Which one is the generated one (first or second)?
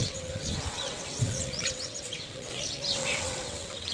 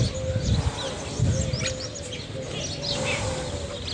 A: first